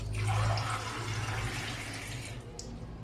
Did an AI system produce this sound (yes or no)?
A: no